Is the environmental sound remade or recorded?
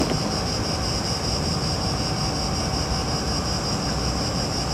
recorded